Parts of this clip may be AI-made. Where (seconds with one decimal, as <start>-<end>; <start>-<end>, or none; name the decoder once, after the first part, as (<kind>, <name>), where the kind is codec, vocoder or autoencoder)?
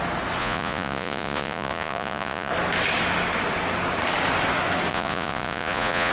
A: 0.4-2.5 (vocoder, Vocos); 4.9-6.1